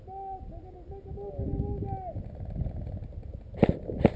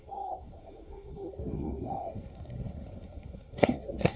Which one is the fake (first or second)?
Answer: second